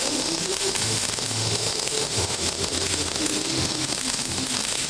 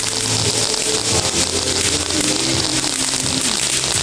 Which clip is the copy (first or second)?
first